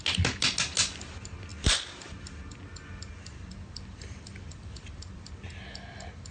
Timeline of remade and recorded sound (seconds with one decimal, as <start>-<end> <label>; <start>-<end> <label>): 0.0-1.5 recorded; 1.5-5.3 remade; 5.3-6.3 recorded